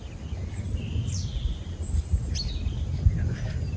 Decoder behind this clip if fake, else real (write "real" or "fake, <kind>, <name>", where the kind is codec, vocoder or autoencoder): real